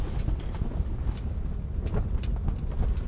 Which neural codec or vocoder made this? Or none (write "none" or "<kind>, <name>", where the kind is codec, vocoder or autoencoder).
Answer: none